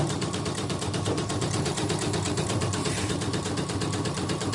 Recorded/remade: remade